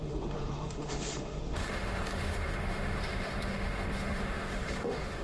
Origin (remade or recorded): remade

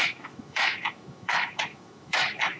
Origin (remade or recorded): remade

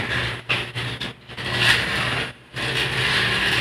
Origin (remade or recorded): recorded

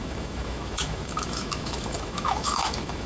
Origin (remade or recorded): remade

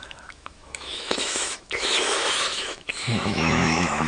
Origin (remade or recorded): remade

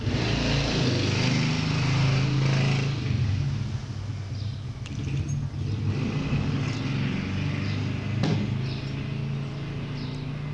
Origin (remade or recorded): recorded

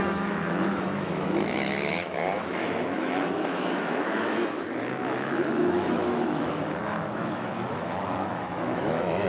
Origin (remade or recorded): remade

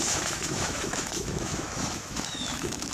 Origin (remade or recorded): remade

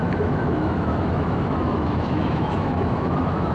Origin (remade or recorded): remade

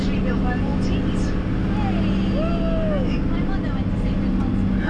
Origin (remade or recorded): recorded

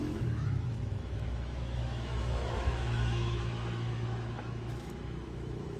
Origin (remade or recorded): remade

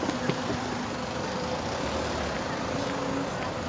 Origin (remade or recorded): recorded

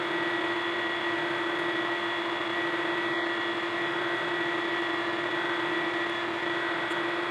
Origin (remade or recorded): recorded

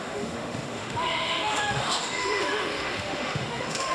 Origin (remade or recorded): remade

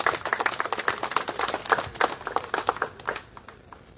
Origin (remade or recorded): recorded